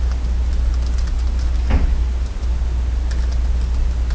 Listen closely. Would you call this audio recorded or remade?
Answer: recorded